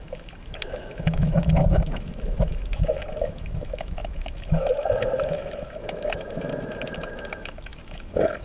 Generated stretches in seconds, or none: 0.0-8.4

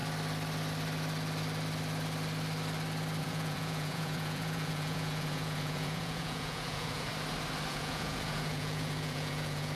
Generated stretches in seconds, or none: 3.2-7.1; 7.7-9.8

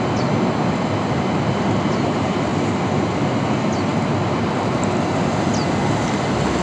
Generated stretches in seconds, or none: none

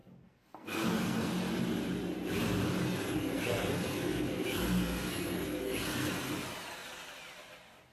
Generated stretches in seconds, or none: 0.0-1.3; 3.0-6.1

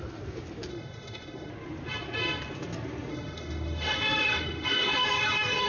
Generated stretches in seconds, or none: 0.7-1.5; 3.1-5.7